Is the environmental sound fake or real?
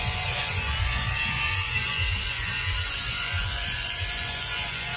fake